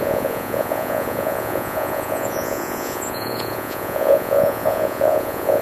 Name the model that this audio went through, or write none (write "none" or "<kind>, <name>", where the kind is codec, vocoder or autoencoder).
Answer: vocoder, Vocos